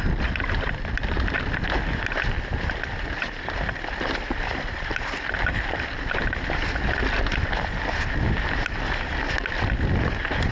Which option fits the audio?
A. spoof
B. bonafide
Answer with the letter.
B